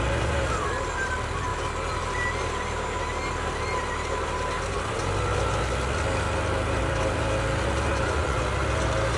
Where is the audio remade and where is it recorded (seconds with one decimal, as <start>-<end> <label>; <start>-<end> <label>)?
0.0-7.9 recorded; 7.9-8.4 remade; 8.4-9.2 recorded